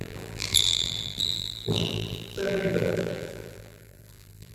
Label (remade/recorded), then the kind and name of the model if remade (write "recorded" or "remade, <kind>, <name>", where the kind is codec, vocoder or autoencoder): remade, vocoder, BigVGAN v2